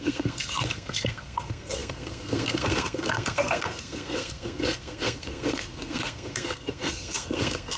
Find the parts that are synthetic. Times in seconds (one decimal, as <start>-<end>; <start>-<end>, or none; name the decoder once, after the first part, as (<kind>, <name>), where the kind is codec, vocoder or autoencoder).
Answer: 0.0-7.8 (codec, SNAC)